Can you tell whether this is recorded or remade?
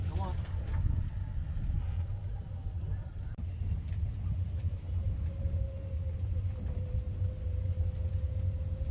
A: recorded